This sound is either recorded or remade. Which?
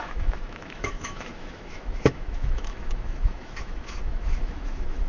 remade